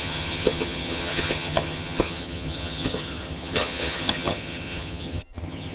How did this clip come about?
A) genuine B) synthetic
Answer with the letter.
B